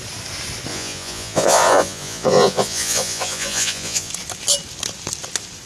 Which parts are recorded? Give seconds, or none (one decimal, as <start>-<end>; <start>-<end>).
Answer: 0.0-0.7; 4.1-5.7